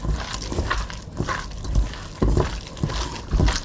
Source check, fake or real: real